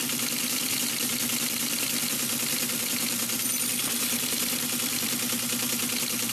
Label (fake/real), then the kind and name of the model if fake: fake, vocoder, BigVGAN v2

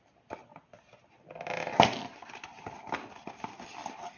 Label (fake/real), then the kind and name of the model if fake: real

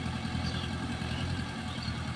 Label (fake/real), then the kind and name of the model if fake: fake, vocoder, BigVGAN v2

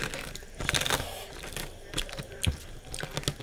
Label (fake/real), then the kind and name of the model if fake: real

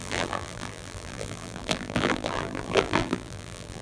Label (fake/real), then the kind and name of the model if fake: fake, vocoder, BigVGAN v2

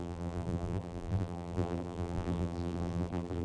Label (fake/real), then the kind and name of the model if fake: fake, vocoder, BigVGAN v2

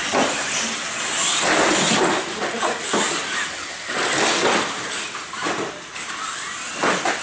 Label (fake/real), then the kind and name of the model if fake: real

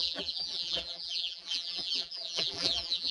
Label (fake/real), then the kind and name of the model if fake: fake, vocoder, BigVGAN v2